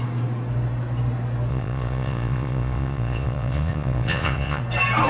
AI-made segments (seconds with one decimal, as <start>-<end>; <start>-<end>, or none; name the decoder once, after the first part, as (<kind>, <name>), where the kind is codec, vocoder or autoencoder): 1.5-4.6 (vocoder, Vocos)